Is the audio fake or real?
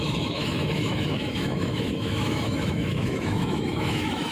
fake